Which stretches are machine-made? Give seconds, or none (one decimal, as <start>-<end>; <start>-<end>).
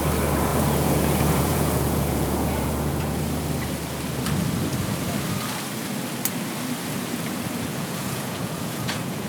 0.5-3.2; 7.7-9.3